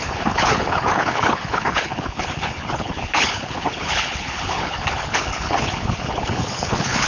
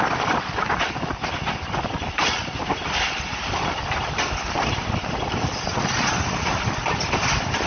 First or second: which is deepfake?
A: first